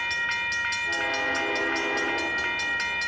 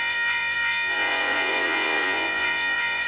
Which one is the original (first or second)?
first